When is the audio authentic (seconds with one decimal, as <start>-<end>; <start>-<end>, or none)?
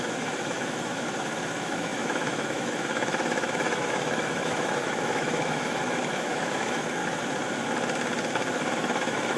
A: 7.0-8.5